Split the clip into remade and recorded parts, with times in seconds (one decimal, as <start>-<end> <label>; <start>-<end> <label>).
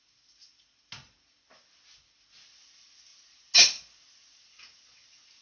0.0-5.4 recorded